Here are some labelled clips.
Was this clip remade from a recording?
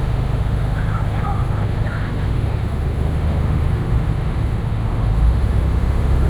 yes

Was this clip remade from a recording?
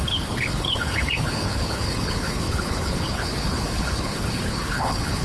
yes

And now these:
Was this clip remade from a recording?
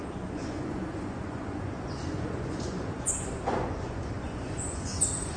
yes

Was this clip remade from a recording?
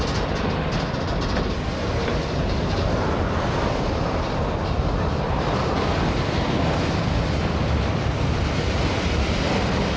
no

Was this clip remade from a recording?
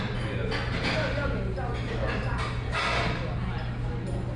no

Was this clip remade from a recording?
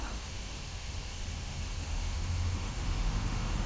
yes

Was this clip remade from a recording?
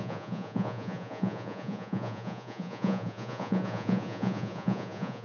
yes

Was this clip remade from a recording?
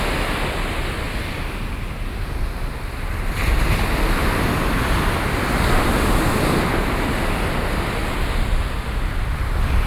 no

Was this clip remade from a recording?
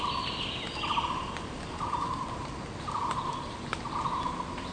no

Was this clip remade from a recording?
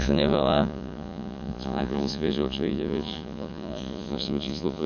yes